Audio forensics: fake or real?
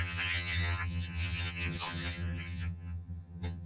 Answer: fake